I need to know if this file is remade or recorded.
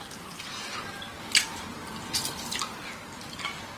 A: recorded